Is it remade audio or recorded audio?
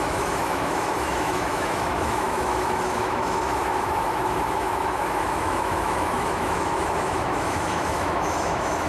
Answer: remade